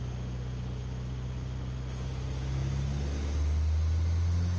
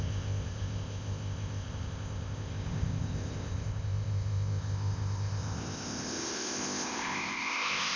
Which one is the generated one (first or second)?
second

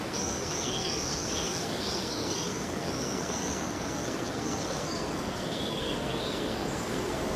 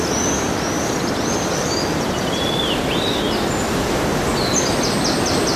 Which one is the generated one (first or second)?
first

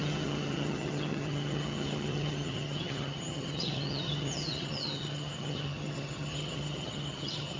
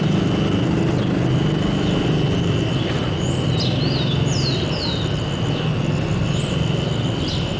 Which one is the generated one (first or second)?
first